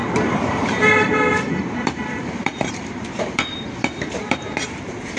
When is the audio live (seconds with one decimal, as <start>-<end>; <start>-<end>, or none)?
none